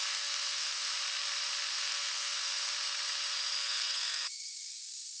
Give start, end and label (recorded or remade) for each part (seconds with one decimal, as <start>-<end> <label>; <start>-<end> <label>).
0.0-0.9 remade; 0.9-1.7 recorded; 1.7-2.7 remade; 2.7-3.6 recorded; 3.6-5.2 remade